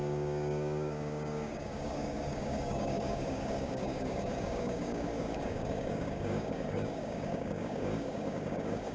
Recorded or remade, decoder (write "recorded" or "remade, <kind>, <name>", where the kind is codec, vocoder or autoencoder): remade, codec, DAC